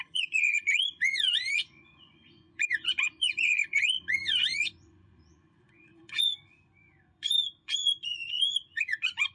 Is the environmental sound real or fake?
fake